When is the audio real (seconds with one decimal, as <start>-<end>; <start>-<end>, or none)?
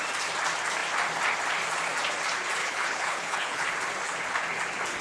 0.0-2.6; 3.7-5.0